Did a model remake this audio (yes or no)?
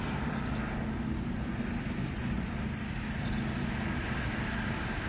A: no